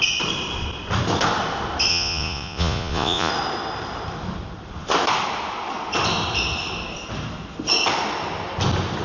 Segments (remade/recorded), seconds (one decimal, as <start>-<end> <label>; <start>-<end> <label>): 0.0-1.9 recorded; 1.9-3.3 remade; 3.3-9.0 recorded